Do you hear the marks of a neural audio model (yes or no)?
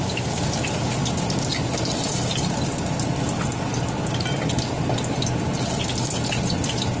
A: no